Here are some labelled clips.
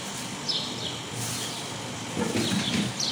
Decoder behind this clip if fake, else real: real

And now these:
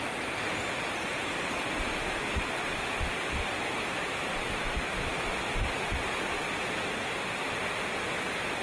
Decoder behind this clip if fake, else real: real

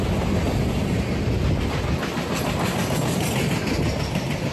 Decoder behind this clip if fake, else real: real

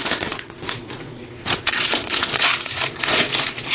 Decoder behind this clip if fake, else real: fake, vocoder, Vocos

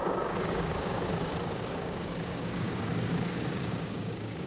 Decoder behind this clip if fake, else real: fake, codec, DAC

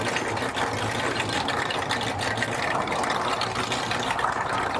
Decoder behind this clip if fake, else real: real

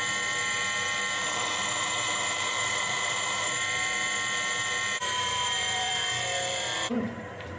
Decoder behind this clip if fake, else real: fake, vocoder, BigVGAN v2